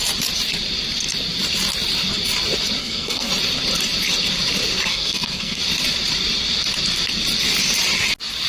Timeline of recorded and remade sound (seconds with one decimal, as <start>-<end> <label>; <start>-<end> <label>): 0.0-2.8 recorded; 2.8-3.3 remade; 3.3-4.9 recorded; 4.9-5.6 remade; 5.6-8.5 recorded